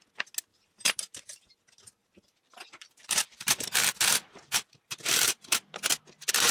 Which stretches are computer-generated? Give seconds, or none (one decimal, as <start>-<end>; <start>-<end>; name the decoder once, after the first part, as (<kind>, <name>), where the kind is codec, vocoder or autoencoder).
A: 0.5-1.6 (vocoder, BigVGAN v2); 2.0-5.6